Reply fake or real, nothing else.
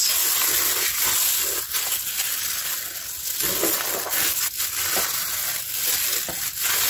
real